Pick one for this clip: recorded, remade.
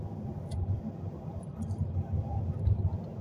recorded